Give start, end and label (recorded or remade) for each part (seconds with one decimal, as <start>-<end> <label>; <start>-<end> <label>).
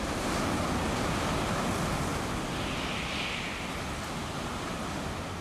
0.0-5.4 recorded